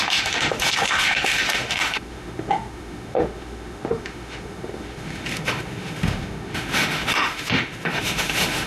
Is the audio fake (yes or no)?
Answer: yes